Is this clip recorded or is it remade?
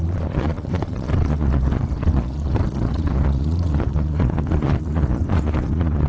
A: remade